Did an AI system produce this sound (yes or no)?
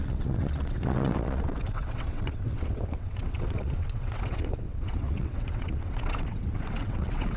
yes